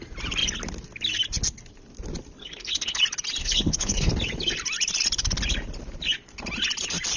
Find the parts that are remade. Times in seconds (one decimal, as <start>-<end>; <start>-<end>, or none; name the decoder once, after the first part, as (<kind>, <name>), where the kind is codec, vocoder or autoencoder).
2.4-3.0 (codec, HILCodec); 3.4-4.1